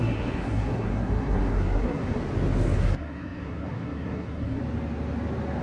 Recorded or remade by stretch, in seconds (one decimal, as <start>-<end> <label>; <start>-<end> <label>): 0.0-2.2 remade; 2.2-2.8 recorded; 2.8-4.6 remade; 4.6-5.6 recorded